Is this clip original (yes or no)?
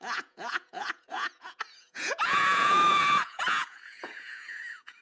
no